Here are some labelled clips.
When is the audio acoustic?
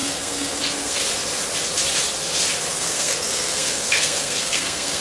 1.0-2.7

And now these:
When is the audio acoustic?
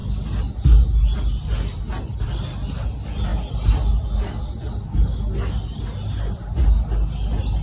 0.0-7.6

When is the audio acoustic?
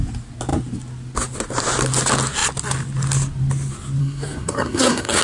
0.0-4.0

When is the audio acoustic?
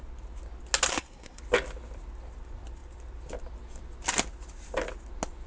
0.0-0.9; 1.4-5.5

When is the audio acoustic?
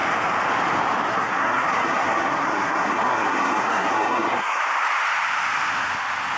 0.0-1.1; 4.6-6.4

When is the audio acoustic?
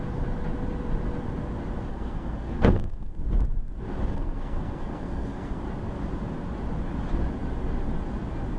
0.0-1.9; 3.2-4.1; 5.6-8.6